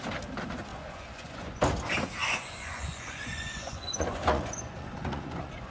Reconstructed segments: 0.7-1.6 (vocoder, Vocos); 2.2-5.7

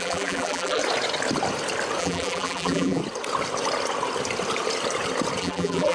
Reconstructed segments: 0.0-0.8 (vocoder, BigVGAN v2); 2.0-3.0; 5.4-5.9

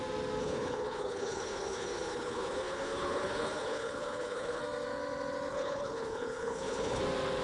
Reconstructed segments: 0.4-4.6 (codec, HILCodec); 5.5-7.0

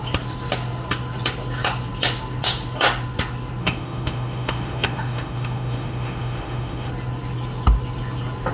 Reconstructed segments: 3.6-6.9 (autoencoder, DAC-VAE)

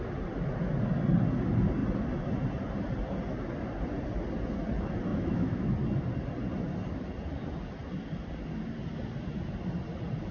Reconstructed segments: 5.1-5.7 (autoencoder, DAC-VAE)

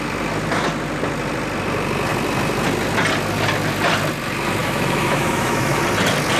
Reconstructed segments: 4.6-5.8 (autoencoder, DAC-VAE)